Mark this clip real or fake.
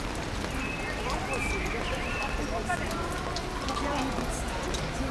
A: real